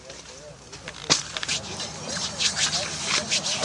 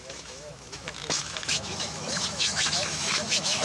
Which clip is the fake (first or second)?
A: second